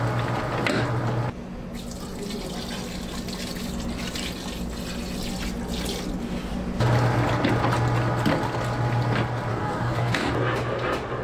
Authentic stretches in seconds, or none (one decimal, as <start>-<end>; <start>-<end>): 0.0-9.5; 10.3-11.2